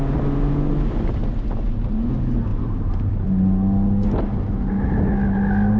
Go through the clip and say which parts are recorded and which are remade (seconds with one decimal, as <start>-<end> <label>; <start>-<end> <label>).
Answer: 0.0-2.5 recorded; 2.5-3.1 remade; 3.1-5.8 recorded